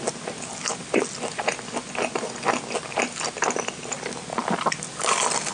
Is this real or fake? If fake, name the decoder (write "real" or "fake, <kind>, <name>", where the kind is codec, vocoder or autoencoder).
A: real